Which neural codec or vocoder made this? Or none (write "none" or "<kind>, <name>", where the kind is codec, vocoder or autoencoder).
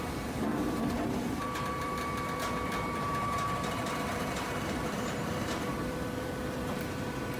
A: vocoder, BigVGAN v2